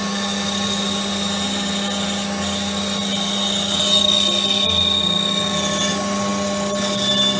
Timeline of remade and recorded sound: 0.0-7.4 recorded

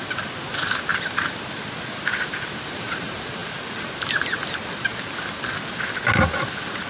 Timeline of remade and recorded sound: 0.0-6.9 recorded

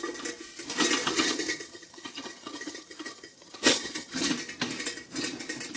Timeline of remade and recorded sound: 0.0-1.0 recorded; 1.0-4.3 remade; 4.3-5.8 recorded

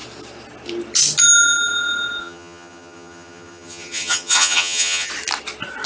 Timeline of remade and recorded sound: 0.0-2.2 recorded; 2.2-5.1 remade; 5.1-5.9 recorded

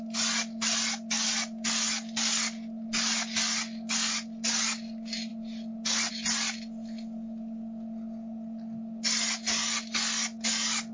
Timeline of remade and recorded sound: 0.0-10.9 recorded

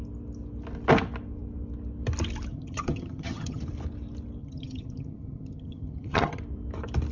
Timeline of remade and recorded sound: 0.0-2.5 recorded; 2.5-3.6 remade; 3.6-4.4 recorded; 4.4-6.4 remade; 6.4-7.1 recorded

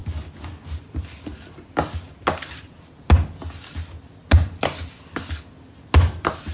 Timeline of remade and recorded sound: 0.0-6.5 recorded

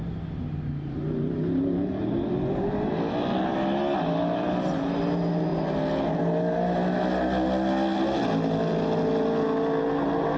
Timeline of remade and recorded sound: 0.0-10.4 recorded